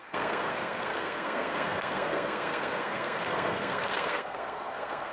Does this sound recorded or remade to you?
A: remade